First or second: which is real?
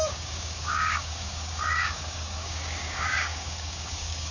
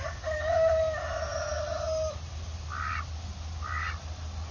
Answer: second